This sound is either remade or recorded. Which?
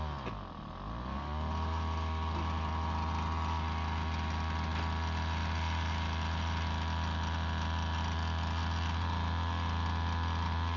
recorded